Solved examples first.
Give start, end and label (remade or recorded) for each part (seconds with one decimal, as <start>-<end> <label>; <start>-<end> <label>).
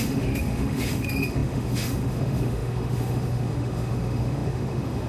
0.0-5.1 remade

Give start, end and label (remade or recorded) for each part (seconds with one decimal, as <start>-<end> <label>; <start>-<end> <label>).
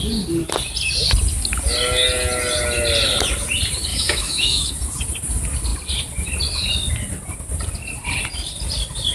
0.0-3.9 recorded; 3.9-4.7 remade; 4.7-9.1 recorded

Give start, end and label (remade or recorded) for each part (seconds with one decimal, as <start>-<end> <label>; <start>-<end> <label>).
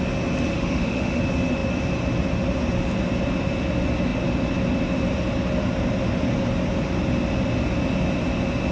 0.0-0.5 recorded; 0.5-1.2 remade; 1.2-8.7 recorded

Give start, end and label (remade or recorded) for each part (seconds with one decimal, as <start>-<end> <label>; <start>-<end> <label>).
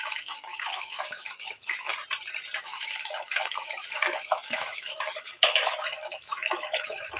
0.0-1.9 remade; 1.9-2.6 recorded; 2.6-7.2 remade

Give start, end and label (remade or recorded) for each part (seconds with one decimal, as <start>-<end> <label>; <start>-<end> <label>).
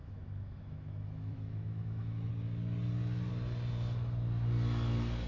0.0-2.3 remade; 2.3-5.3 recorded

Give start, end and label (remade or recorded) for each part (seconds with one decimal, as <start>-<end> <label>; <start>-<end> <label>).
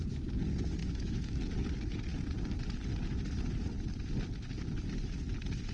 0.0-0.8 recorded; 0.8-1.4 remade; 1.4-5.7 recorded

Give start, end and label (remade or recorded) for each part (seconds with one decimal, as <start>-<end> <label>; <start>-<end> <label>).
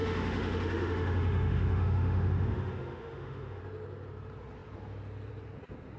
0.0-3.6 remade; 3.6-6.0 recorded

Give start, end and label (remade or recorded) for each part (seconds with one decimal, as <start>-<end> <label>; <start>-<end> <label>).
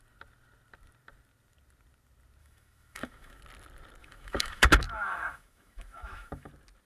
0.0-2.4 recorded; 2.4-3.4 remade; 3.4-4.0 recorded; 4.0-6.5 remade; 6.5-6.9 recorded